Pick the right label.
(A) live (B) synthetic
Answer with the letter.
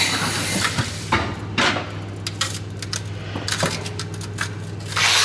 A